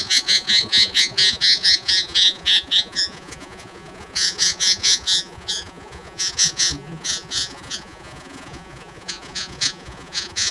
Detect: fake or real fake